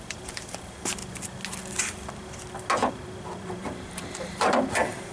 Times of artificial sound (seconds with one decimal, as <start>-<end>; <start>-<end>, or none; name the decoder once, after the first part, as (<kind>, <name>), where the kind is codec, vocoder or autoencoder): 0.0-1.0 (vocoder, BigVGAN v2); 2.9-5.1